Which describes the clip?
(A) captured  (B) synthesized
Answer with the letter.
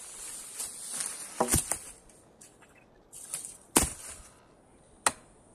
A